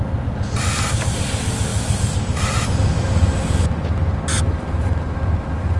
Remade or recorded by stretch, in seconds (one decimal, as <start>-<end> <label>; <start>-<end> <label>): 0.0-5.8 recorded